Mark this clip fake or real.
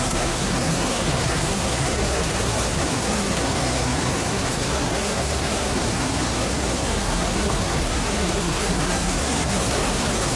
fake